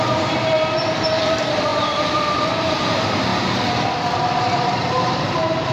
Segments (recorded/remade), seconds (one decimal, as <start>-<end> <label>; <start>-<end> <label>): 0.0-3.3 remade; 3.3-3.9 recorded; 3.9-5.7 remade